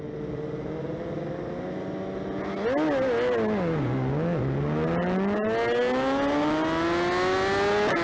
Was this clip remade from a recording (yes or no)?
no